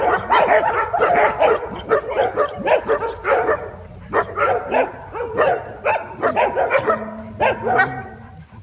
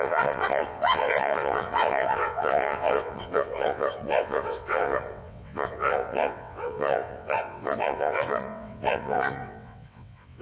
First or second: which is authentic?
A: first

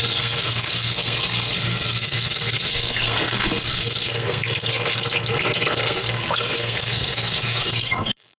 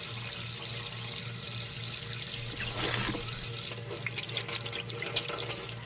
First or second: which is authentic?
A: second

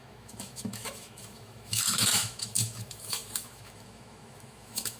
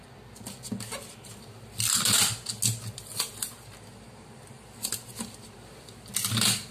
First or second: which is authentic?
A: second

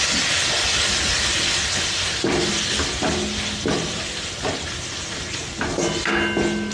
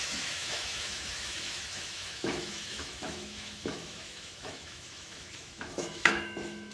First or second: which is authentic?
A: first